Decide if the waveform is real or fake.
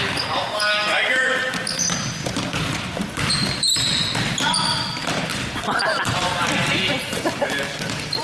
fake